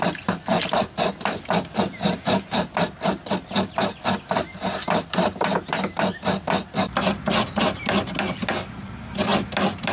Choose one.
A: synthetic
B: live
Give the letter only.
B